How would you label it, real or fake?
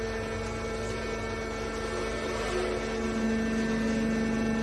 real